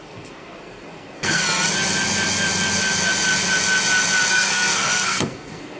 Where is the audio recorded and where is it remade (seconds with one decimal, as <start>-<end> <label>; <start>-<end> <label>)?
0.0-1.4 remade; 1.4-4.3 recorded; 4.3-5.8 remade